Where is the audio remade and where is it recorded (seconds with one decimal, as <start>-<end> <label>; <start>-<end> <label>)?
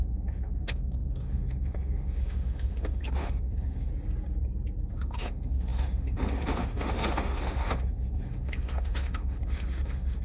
0.0-3.9 remade; 3.9-4.9 recorded; 4.9-10.2 remade